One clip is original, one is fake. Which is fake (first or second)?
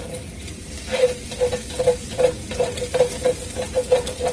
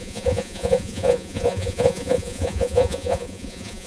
second